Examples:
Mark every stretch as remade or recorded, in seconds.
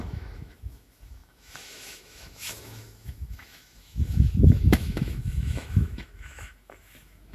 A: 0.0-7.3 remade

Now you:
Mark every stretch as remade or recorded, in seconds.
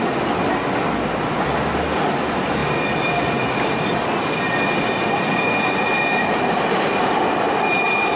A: 0.0-8.2 recorded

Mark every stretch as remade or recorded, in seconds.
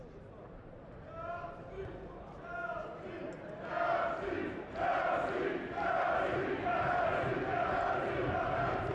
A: 0.0-8.9 recorded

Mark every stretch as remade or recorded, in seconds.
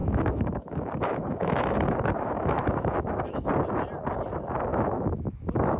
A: 0.0-3.5 remade; 3.5-4.7 recorded; 4.7-5.8 remade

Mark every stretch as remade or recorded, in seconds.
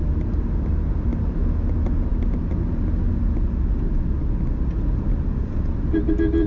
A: 0.0-6.5 recorded